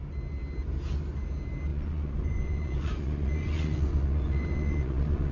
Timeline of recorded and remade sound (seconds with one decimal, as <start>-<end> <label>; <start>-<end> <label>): 0.0-1.7 recorded; 1.7-5.3 remade